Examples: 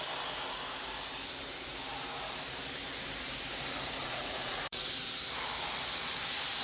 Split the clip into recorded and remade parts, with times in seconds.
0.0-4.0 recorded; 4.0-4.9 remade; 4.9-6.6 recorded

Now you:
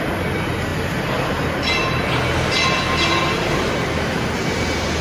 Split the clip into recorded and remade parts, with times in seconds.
0.0-5.0 recorded